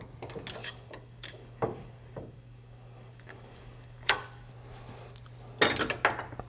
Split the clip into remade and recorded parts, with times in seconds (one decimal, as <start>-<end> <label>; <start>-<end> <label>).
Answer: 0.0-0.6 recorded; 0.6-4.5 remade; 4.5-6.5 recorded